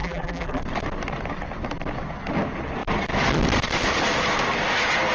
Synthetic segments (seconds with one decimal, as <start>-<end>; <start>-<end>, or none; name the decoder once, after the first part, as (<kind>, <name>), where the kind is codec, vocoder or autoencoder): 0.0-0.6 (vocoder, BigVGAN v2)